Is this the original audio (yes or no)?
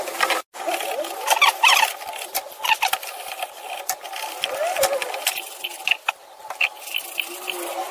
yes